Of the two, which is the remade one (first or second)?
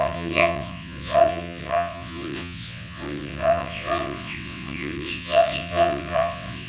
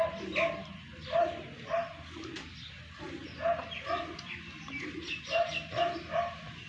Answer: first